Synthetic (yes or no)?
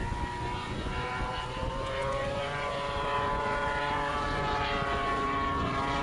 yes